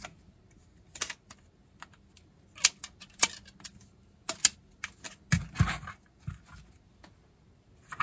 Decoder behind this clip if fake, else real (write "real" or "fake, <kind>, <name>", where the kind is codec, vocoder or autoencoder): real